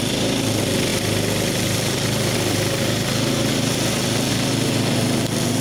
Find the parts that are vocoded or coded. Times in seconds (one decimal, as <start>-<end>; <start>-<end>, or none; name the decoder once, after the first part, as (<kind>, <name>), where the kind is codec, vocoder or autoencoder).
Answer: none